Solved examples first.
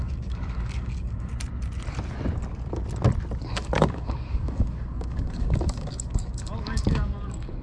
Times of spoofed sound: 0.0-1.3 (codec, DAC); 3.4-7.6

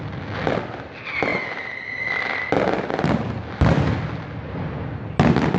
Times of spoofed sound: none